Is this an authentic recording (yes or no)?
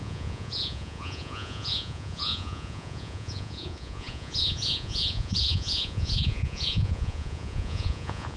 no